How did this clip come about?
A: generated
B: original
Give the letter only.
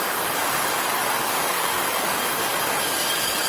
A